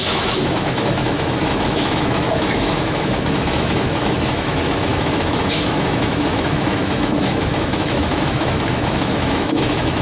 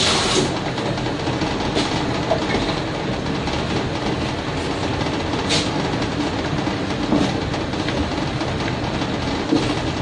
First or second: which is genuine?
second